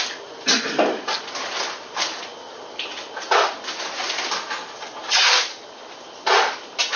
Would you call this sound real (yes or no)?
yes